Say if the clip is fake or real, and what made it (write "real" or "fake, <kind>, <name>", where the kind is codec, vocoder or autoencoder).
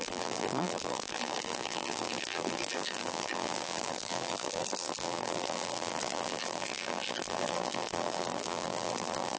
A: fake, vocoder, BigVGAN v2